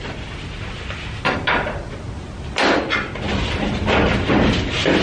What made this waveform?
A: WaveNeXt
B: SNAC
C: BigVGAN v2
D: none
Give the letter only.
D